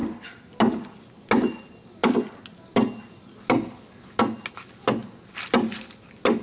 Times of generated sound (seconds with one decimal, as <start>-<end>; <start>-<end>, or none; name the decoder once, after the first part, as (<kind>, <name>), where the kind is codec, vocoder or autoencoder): none